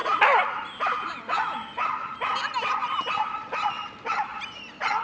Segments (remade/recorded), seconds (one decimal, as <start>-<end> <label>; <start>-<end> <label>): 0.0-2.8 recorded; 2.8-3.8 remade; 3.8-5.0 recorded